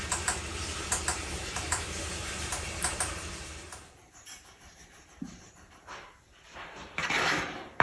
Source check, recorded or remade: remade